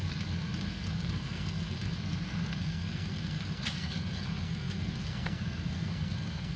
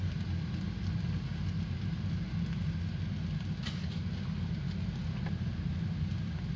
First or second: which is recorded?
second